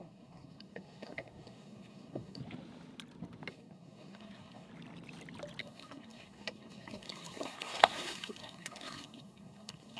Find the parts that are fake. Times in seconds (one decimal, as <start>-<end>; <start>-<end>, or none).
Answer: 0.0-2.4; 3.5-4.7; 5.6-10.0